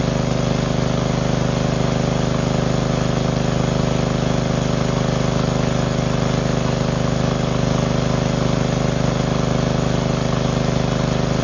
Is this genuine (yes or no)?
yes